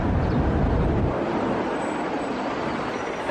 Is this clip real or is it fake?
real